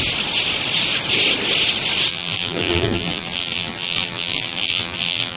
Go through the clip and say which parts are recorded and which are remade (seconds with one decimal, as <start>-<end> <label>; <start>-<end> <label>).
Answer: 0.0-2.1 recorded; 2.1-5.4 remade